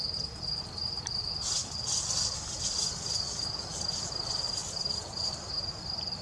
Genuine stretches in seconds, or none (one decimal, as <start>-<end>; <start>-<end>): 0.0-4.6